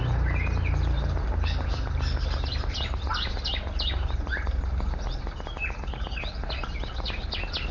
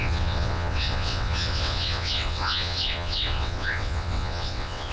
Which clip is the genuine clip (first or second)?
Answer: first